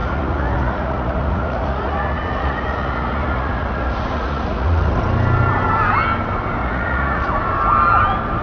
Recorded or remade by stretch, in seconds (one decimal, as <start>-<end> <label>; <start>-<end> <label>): 0.0-5.0 remade; 5.0-6.6 recorded; 6.6-7.3 remade; 7.3-8.4 recorded